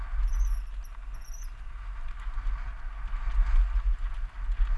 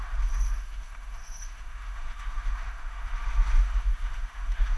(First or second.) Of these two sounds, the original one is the first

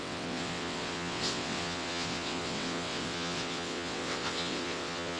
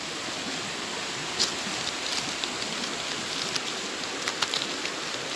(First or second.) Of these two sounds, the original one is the second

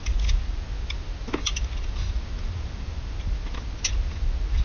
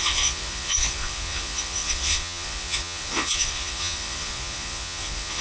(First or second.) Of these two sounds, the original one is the first